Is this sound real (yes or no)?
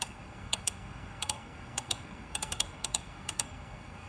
no